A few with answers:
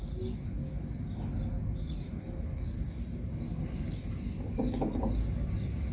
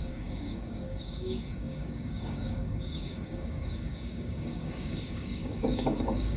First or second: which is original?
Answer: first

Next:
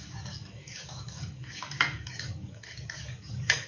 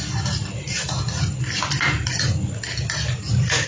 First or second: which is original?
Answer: second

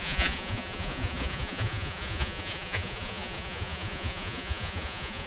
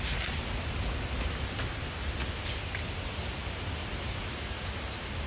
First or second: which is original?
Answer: second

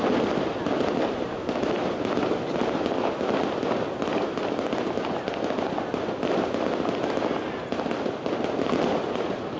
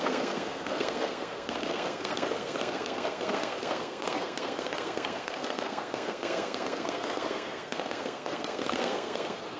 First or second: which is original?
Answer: first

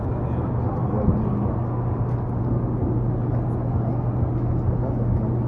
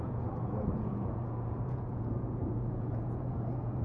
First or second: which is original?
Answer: first